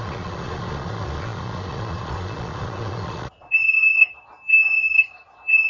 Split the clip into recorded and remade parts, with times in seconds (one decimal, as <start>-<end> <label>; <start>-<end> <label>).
0.0-5.7 remade